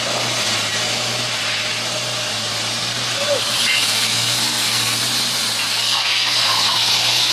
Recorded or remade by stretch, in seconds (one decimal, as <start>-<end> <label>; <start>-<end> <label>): 0.0-3.8 recorded; 3.8-5.0 remade; 5.0-5.7 recorded; 5.7-7.3 remade